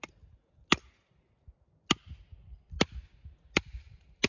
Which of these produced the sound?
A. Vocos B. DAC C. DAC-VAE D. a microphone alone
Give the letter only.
D